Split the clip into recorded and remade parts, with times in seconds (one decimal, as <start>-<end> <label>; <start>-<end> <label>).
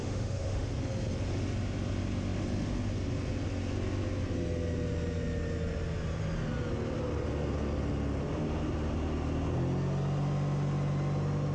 0.0-0.7 remade; 0.7-11.5 recorded